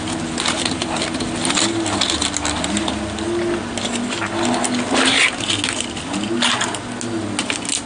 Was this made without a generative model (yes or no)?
yes